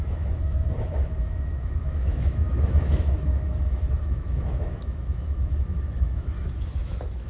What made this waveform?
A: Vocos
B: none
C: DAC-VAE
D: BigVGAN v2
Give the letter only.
C